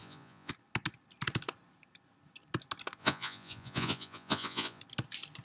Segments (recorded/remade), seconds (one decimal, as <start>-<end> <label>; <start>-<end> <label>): 0.0-0.5 remade; 0.5-3.0 recorded; 3.0-4.8 remade; 4.8-5.4 recorded